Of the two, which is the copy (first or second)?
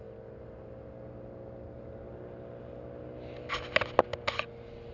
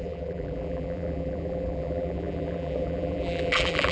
second